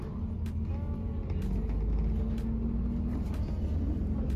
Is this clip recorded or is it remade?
recorded